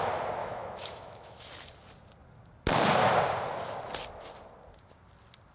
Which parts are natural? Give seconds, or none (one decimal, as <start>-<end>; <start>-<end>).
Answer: 0.0-0.4; 1.5-5.5